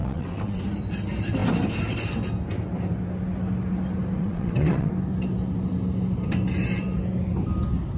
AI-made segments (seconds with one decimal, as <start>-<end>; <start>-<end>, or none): 0.0-0.6; 4.2-4.9